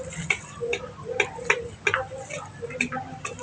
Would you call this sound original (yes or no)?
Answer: yes